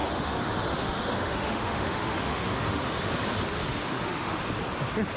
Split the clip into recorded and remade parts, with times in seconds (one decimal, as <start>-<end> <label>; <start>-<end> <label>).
0.0-3.1 remade; 3.1-3.6 recorded; 3.6-4.4 remade; 4.4-5.2 recorded